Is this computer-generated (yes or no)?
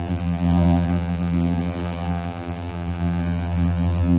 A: yes